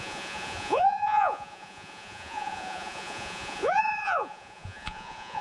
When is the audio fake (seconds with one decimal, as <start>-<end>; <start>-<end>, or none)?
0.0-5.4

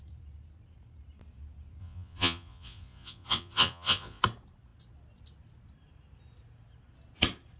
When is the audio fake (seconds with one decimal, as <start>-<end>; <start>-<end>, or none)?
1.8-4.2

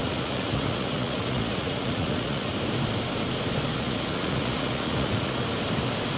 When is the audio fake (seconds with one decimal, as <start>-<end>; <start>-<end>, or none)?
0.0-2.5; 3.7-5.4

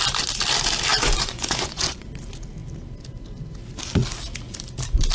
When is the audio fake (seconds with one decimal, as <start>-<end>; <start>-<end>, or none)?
0.9-2.1

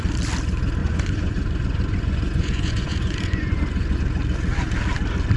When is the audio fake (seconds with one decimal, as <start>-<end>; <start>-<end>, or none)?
0.8-4.0

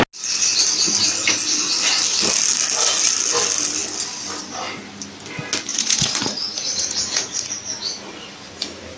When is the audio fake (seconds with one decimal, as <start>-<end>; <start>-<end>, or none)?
5.7-7.5